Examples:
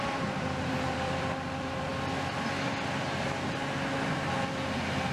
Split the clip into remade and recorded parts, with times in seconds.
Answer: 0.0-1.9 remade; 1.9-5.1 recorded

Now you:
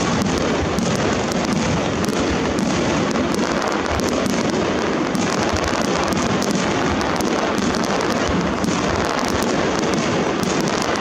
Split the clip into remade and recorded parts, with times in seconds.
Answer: 0.0-11.0 recorded

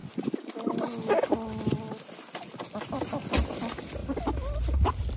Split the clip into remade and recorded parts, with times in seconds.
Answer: 0.0-5.2 recorded

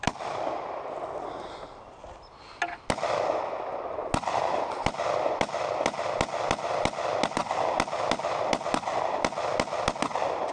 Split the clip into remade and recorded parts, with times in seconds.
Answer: 0.0-10.5 recorded

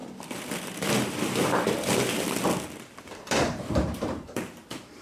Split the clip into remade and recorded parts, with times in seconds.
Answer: 0.0-3.0 recorded; 3.0-5.0 remade

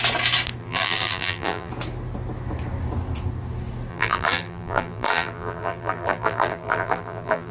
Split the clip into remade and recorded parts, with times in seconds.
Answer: 0.0-0.6 recorded; 0.6-1.7 remade; 1.7-3.9 recorded; 3.9-7.5 remade

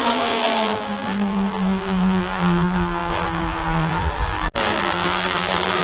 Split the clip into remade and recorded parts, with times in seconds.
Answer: 0.0-5.8 remade